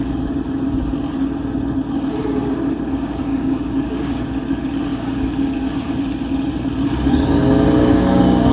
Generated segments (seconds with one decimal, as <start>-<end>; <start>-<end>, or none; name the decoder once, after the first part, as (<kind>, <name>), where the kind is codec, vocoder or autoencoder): 3.3-4.2 (codec, DAC); 4.9-5.9; 7.8-8.5